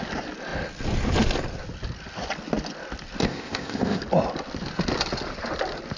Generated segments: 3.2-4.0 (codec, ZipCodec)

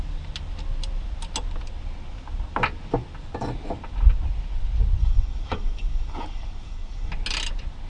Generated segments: 5.0-7.1 (codec, DAC)

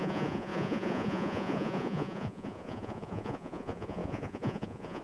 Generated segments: 0.0-5.0 (vocoder, Vocos)

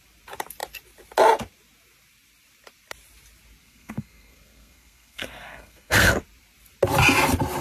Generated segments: 3.6-6.1 (codec, SNAC)

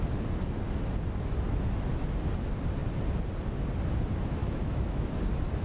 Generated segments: 4.4-5.1 (autoencoder, DAC-VAE)